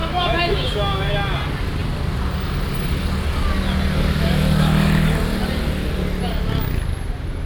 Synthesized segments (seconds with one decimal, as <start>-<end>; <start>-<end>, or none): 0.0-1.1